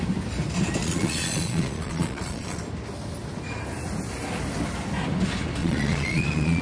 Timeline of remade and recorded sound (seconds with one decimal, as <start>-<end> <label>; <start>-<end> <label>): 0.0-0.8 recorded; 0.8-2.6 remade; 2.6-5.6 recorded; 5.6-6.6 remade